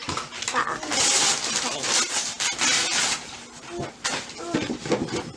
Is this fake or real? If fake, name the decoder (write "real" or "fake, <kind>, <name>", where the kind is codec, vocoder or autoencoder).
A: real